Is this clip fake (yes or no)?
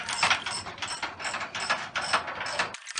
no